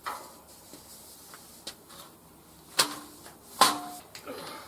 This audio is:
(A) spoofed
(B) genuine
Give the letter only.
B